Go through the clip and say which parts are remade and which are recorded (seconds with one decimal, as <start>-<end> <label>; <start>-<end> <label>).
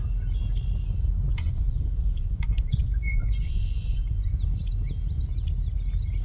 0.0-1.3 recorded; 1.3-4.3 remade; 4.3-6.2 recorded